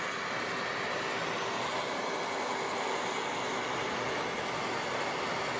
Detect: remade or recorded recorded